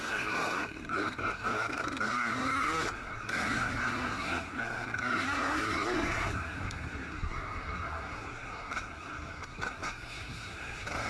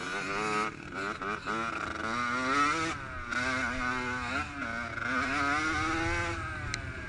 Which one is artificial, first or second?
first